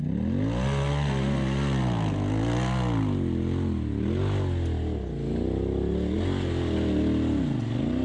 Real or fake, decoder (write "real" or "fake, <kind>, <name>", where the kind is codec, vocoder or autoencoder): real